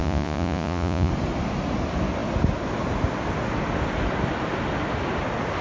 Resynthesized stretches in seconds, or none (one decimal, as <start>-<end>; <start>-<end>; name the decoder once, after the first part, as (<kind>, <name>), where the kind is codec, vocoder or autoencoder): 0.0-1.1 (vocoder, Vocos)